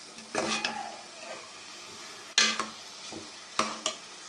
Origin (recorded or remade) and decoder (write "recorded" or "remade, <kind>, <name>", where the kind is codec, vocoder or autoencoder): recorded